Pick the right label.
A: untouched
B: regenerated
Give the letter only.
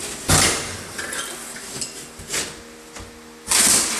A